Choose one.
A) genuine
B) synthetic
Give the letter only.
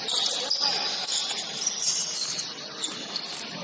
A